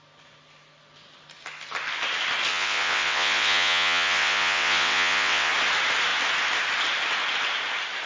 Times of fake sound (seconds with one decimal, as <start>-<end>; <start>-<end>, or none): 2.5-5.5